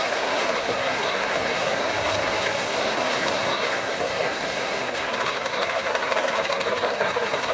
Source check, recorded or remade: remade